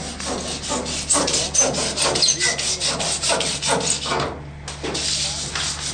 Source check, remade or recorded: recorded